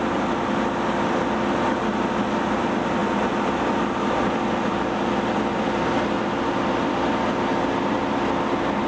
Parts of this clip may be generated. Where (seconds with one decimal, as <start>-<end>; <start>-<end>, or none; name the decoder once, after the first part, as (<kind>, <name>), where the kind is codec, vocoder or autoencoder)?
none